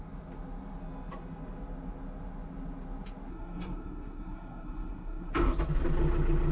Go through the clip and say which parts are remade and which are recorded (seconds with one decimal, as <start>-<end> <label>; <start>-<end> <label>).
0.0-3.3 recorded; 3.3-5.3 remade; 5.3-6.5 recorded